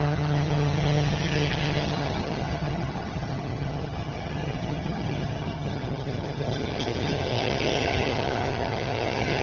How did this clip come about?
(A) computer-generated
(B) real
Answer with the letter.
A